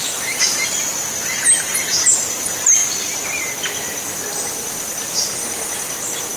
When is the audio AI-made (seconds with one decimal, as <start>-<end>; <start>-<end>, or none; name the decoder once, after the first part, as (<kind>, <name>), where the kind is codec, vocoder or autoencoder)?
none